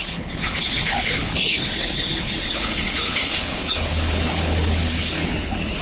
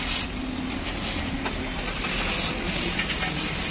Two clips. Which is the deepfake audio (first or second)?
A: first